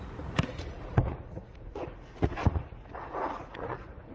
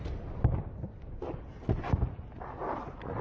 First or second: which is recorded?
second